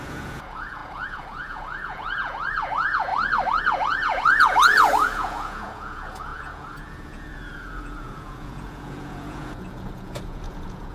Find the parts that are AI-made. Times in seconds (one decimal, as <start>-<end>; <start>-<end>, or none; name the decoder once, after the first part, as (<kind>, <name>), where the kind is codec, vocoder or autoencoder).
0.0-3.1 (vocoder, Vocos); 3.6-10.9